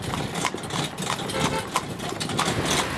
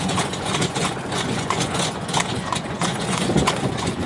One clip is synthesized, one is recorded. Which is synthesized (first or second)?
second